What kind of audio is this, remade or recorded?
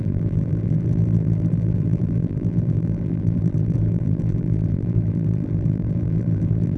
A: remade